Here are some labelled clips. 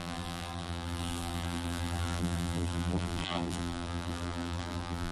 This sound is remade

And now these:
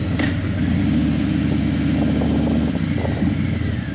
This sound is recorded